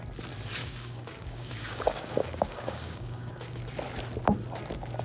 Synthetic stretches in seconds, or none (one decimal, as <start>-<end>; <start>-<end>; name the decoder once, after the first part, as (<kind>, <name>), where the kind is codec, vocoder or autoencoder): 0.6-3.6 (codec, DAC)